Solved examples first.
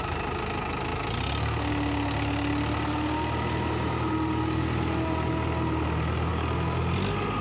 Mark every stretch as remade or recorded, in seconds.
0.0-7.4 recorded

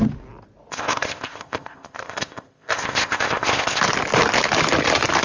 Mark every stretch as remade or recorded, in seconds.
0.0-0.7 recorded; 0.7-3.8 remade; 3.8-5.2 recorded

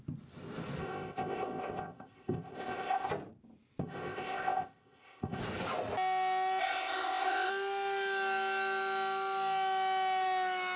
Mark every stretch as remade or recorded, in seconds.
0.0-0.8 recorded; 0.8-3.1 remade; 3.1-3.8 recorded; 3.8-5.4 remade; 5.4-6.6 recorded; 6.6-7.5 remade; 7.5-10.8 recorded

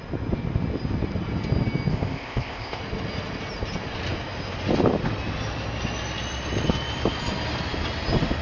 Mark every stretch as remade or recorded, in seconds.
0.0-1.9 recorded; 1.9-2.8 remade; 2.8-8.4 recorded

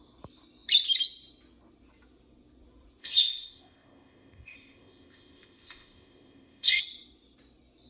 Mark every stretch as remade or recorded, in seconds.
0.0-3.0 recorded; 3.0-6.8 remade; 6.8-7.9 recorded

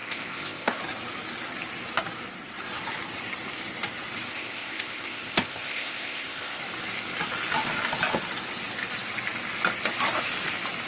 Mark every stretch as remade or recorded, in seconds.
0.0-0.8 remade; 0.8-4.3 recorded; 4.3-6.6 remade; 6.6-10.9 recorded

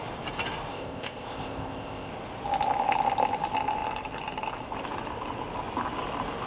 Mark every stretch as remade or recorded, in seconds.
0.0-0.7 recorded; 0.7-2.1 remade; 2.1-6.5 recorded